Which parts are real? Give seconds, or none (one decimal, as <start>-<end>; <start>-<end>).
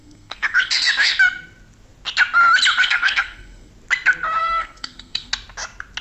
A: 0.7-2.8; 3.7-4.4; 5.3-6.0